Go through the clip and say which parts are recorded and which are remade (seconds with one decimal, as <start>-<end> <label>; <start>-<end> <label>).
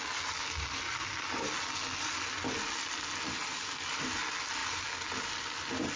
0.0-6.0 recorded